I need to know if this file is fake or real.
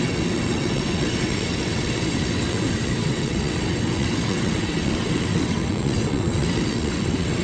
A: fake